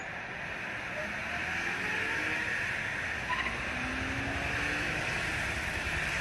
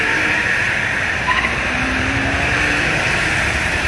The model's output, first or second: second